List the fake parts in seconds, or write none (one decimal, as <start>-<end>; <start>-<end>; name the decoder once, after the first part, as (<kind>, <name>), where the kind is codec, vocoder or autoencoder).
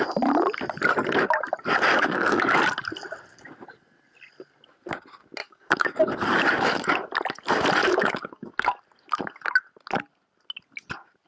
1.9-2.6 (codec, DAC); 5.4-6.0; 7.8-8.8